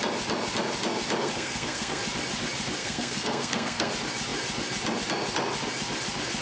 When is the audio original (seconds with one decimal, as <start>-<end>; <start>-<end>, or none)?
0.0-1.2; 2.0-2.8; 3.9-6.4